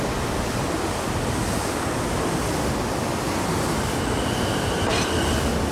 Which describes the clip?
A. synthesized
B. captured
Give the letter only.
B